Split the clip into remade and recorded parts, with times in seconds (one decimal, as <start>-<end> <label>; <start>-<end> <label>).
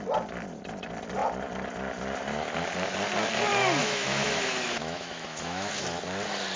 0.0-3.8 recorded; 3.8-5.7 remade; 5.7-6.6 recorded